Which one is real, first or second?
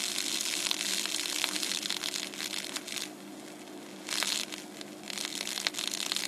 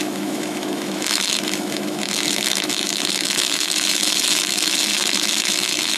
first